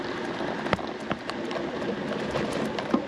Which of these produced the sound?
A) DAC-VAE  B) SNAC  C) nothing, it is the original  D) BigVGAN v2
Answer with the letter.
C